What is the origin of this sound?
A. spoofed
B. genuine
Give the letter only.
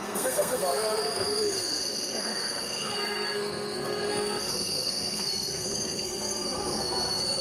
A